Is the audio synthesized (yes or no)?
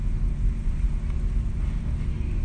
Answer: no